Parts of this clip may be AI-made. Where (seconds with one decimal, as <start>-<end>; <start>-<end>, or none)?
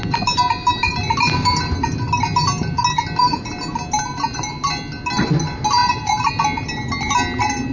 5.8-6.3